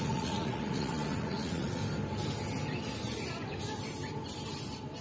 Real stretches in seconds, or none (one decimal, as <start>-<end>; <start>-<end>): 1.8-5.0